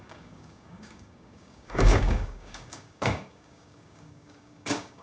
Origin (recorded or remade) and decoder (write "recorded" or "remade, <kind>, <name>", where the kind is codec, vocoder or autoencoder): remade, codec, DAC